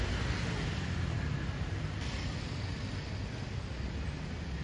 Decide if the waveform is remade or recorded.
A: recorded